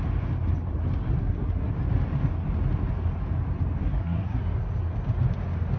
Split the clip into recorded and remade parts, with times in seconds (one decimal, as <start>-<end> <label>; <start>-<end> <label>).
0.0-1.2 recorded; 1.2-1.7 remade; 1.7-3.8 recorded; 3.8-4.4 remade; 4.4-5.8 recorded

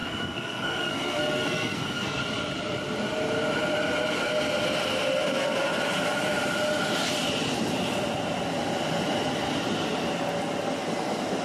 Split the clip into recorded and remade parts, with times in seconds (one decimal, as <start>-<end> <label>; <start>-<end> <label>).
0.0-2.2 remade; 2.2-11.4 recorded

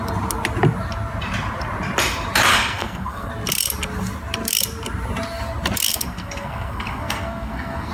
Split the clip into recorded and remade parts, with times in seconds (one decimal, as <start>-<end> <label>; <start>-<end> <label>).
0.0-2.5 recorded; 2.5-3.3 remade; 3.3-5.9 recorded; 5.9-7.9 remade